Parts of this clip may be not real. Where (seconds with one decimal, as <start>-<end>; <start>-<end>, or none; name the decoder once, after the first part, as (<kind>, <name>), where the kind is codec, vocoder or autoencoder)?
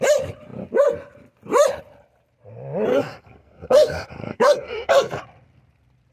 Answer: 2.9-5.2 (codec, SNAC)